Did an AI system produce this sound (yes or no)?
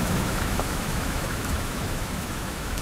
yes